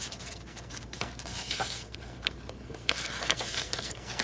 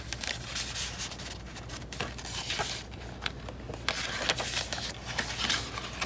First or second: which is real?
second